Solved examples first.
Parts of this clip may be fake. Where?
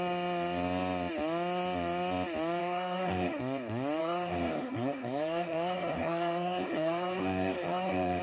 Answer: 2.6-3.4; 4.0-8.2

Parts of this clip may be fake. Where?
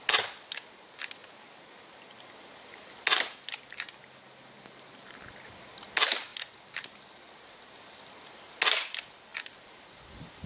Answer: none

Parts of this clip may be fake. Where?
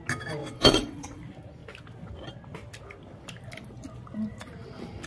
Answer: 0.4-1.2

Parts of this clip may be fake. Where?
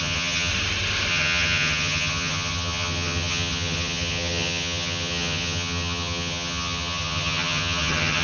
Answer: 0.0-0.5; 1.1-8.2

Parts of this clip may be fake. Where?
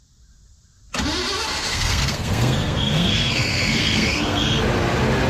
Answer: 1.7-4.6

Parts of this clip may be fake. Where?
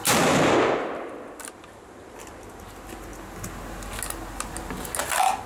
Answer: none